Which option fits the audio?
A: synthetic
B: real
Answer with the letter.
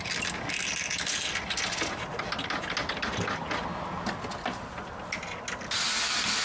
B